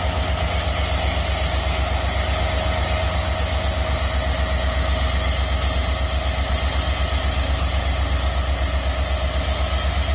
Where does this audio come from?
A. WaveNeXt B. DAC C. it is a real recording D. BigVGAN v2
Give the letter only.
C